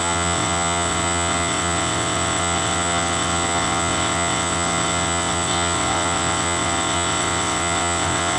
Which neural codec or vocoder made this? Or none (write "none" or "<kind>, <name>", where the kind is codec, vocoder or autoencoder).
vocoder, WaveNeXt